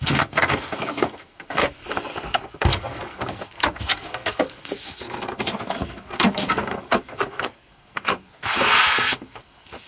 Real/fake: fake